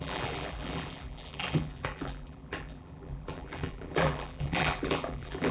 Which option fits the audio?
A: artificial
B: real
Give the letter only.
A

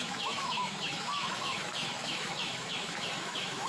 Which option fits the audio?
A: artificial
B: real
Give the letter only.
A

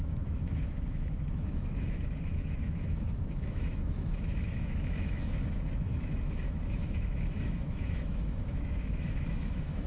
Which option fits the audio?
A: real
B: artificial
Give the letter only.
B